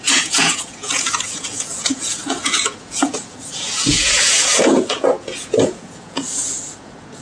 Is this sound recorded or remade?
remade